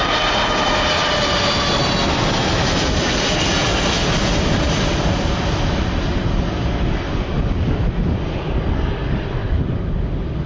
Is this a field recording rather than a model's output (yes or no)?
yes